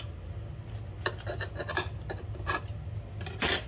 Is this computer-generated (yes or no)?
no